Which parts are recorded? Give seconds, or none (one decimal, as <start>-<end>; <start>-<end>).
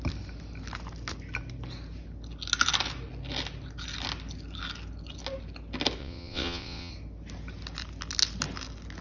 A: 0.0-6.0; 6.9-9.0